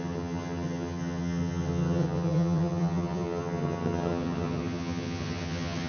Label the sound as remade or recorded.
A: remade